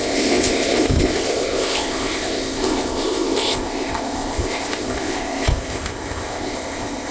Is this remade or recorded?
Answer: remade